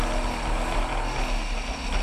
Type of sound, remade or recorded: recorded